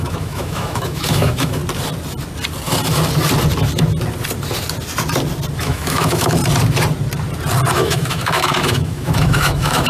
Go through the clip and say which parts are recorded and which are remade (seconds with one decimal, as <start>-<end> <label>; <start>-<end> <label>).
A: 0.0-1.6 remade; 1.6-5.6 recorded; 5.6-6.4 remade; 6.4-7.7 recorded; 7.7-9.9 remade